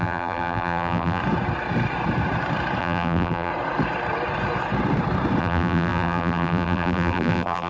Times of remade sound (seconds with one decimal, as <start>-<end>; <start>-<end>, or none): 0.0-1.2; 2.8-3.5; 5.4-7.7